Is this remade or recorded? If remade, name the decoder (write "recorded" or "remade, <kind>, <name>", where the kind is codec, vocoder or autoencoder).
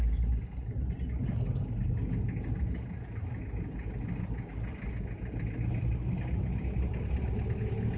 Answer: recorded